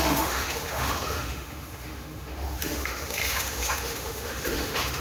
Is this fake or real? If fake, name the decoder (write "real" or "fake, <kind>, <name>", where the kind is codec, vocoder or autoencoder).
fake, autoencoder, DAC-VAE